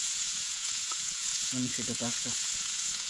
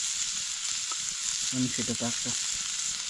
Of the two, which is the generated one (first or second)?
first